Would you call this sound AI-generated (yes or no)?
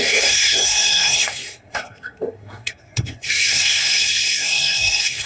yes